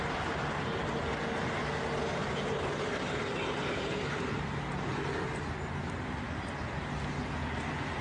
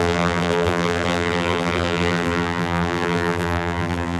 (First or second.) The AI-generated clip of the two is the second